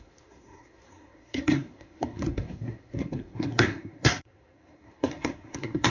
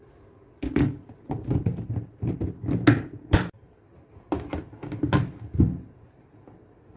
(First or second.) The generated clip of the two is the first